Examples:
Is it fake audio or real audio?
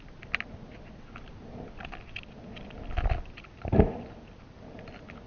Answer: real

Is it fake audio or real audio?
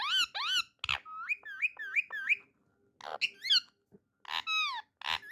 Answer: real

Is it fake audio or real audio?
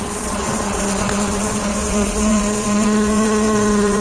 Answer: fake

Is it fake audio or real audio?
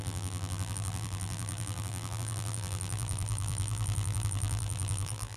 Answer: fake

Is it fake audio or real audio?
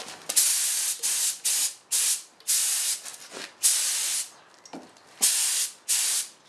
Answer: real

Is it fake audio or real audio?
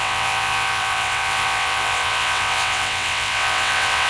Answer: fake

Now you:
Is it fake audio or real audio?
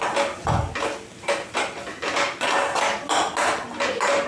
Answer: real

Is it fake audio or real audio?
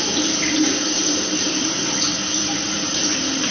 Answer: fake